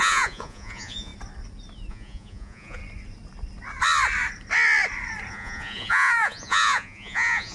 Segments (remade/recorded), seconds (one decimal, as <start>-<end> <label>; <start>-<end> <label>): 0.0-1.1 remade; 1.1-1.9 recorded; 1.9-2.8 remade; 2.8-5.3 recorded; 5.3-7.5 remade